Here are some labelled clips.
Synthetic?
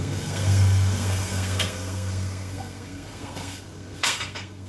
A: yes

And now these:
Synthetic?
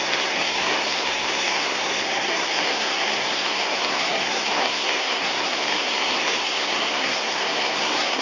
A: yes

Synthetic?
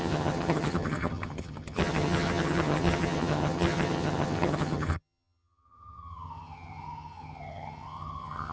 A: yes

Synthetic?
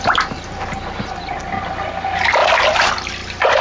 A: no